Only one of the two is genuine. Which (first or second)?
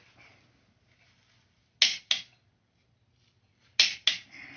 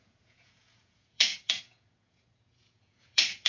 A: first